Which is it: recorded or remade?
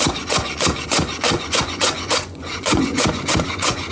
remade